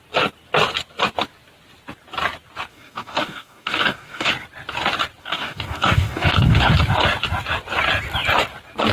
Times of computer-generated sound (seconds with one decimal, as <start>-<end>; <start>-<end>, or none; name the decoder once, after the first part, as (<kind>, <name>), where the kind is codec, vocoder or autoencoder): 2.7-4.3 (codec, DAC); 5.2-6.7